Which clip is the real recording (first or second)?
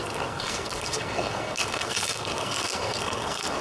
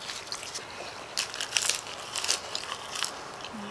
second